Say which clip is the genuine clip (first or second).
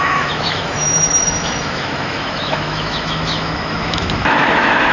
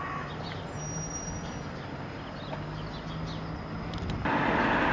second